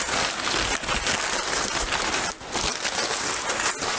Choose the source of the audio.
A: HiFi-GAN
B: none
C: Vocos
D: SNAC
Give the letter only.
B